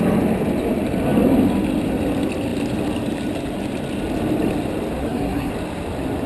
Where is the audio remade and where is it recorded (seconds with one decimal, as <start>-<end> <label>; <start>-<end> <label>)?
0.0-5.0 recorded; 5.0-5.5 remade; 5.5-6.3 recorded